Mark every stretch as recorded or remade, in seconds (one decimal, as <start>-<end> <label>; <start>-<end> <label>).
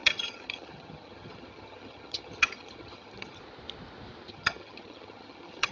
0.0-3.4 remade; 3.4-4.3 recorded; 4.3-5.7 remade